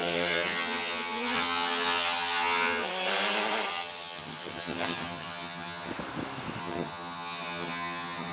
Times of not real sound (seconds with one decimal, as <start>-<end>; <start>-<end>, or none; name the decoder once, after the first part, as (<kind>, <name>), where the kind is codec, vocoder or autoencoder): 0.0-2.9 (vocoder, HiFi-GAN); 3.7-5.9; 6.6-8.3